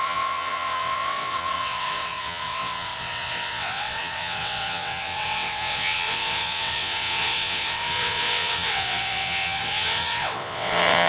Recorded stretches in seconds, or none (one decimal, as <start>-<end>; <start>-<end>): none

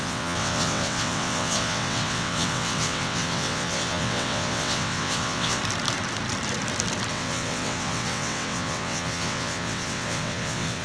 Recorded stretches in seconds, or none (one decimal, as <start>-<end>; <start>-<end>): 5.6-7.1

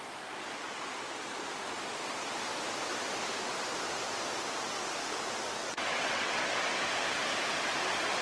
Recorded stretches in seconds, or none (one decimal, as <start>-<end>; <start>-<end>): 0.0-5.6; 6.4-8.2

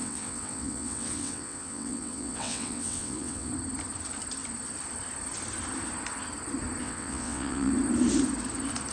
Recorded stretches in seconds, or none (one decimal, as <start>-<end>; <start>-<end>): 3.5-6.8; 7.7-8.9

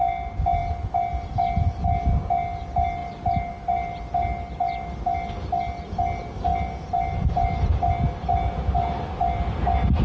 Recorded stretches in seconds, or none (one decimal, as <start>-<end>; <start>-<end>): 0.0-10.0